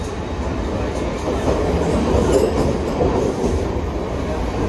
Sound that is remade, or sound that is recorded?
recorded